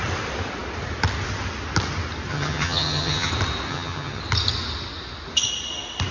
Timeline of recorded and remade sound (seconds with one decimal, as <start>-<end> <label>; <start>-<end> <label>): 0.0-2.3 recorded; 2.3-3.3 remade; 3.3-3.7 recorded; 3.7-4.2 remade; 4.2-6.1 recorded